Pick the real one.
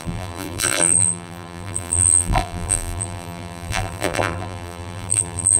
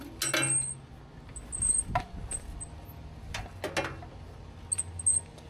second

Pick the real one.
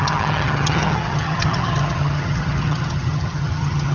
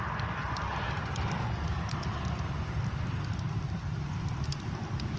second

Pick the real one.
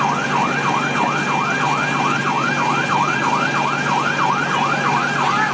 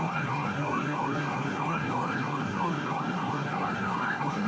first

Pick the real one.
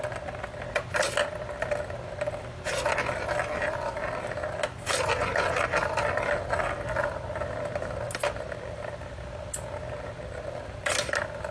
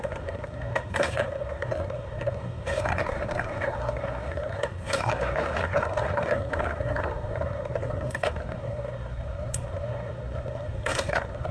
first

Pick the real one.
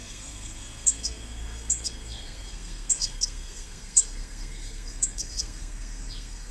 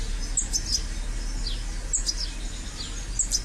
second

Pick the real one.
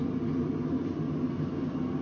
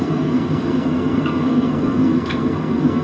first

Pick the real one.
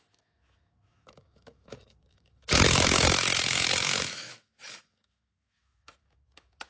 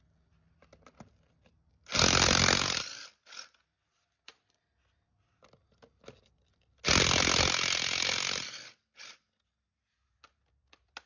second